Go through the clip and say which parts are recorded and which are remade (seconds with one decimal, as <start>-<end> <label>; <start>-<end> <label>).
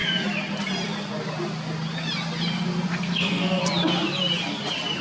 0.0-2.9 recorded; 2.9-3.6 remade; 3.6-5.0 recorded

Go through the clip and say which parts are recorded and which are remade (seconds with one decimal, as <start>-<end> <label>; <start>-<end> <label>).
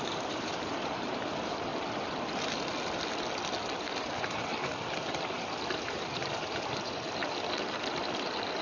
0.0-1.7 remade; 1.7-3.8 recorded; 3.8-4.5 remade; 4.5-5.7 recorded; 5.7-7.2 remade; 7.2-8.6 recorded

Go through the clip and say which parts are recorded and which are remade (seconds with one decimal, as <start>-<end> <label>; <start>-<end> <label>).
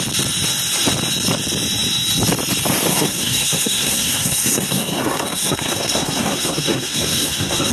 0.0-2.9 recorded; 2.9-7.7 remade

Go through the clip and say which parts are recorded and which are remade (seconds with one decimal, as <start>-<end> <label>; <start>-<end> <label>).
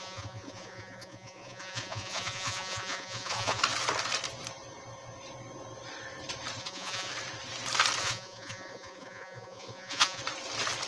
0.0-3.6 remade; 3.6-6.6 recorded; 6.6-7.1 remade; 7.1-8.0 recorded; 8.0-10.2 remade; 10.2-10.9 recorded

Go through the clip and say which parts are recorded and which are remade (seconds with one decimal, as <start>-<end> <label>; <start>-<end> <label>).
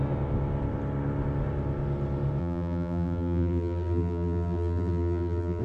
0.0-2.4 recorded; 2.4-5.6 remade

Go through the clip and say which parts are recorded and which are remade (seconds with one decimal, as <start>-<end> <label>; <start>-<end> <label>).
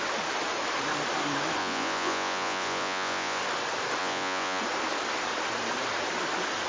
0.0-1.6 recorded; 1.6-3.4 remade; 3.4-4.0 recorded; 4.0-4.6 remade; 4.6-6.7 recorded